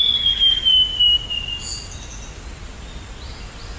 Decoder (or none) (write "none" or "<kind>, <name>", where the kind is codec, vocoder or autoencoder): none